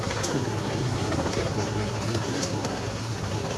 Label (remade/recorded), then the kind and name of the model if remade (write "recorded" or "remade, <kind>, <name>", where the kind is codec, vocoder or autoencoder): remade, codec, SNAC